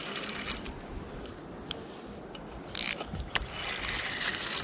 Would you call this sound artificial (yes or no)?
no